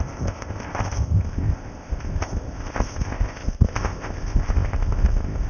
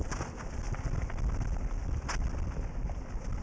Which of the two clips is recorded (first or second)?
second